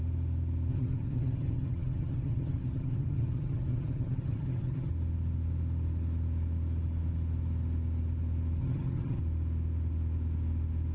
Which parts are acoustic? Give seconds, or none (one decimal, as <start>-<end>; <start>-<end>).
0.0-0.7; 4.9-8.6; 9.2-10.9

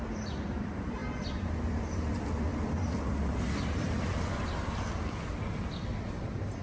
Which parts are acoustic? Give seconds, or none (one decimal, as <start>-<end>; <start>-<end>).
0.0-6.6

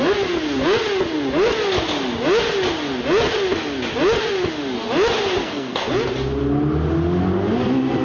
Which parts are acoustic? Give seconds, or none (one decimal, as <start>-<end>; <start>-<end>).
0.0-5.4; 5.9-8.0

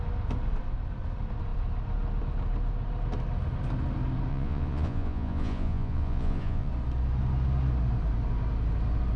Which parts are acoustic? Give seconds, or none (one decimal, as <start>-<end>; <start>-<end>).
0.0-4.3; 6.7-9.2